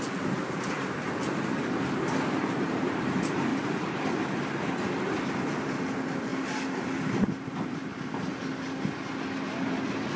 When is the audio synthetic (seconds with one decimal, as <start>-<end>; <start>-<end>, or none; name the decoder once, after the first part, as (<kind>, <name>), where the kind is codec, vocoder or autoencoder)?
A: 0.0-3.5 (vocoder, BigVGAN v2); 5.8-6.3; 6.9-7.9; 9.6-10.2

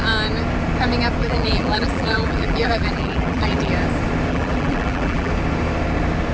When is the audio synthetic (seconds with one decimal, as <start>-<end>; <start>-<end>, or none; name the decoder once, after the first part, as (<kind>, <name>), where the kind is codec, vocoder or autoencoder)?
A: 1.2-3.7 (vocoder, BigVGAN v2); 4.3-5.3

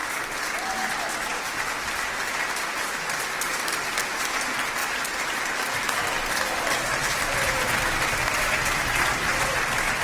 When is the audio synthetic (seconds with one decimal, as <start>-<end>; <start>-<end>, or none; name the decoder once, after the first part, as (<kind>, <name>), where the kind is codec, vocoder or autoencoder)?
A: 7.0-7.6 (vocoder, BigVGAN v2)